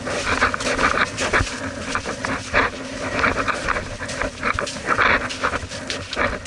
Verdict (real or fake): real